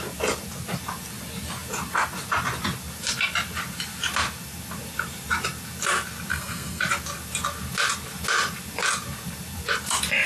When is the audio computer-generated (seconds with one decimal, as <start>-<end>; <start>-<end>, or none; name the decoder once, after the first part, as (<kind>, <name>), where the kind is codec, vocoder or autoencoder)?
6.3-6.8 (codec, SNAC)